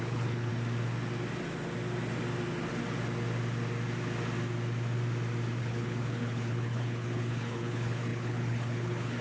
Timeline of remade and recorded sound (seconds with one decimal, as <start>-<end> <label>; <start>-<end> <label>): 0.0-0.5 remade; 0.5-5.6 recorded; 5.6-9.2 remade